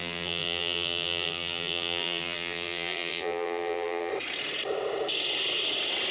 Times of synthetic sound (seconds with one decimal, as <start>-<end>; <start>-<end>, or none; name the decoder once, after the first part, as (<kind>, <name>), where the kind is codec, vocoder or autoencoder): 0.0-4.1 (vocoder, BigVGAN v2)